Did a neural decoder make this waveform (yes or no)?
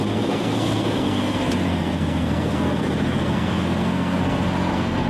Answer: yes